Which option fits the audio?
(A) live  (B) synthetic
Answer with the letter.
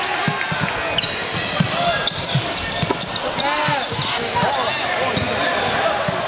A